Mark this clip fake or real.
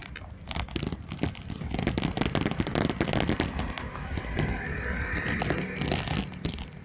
real